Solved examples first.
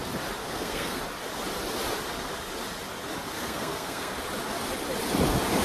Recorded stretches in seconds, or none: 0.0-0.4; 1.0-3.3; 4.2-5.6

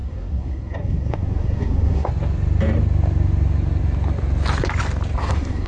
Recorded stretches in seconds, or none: 2.1-5.2

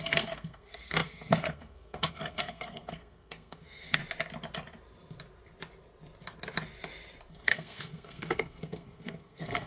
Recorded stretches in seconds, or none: 4.0-7.3